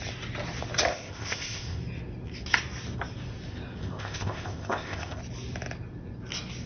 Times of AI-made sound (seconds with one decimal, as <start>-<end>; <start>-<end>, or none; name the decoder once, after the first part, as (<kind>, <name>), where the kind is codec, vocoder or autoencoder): 0.9-1.8 (codec, ZipCodec); 3.8-5.2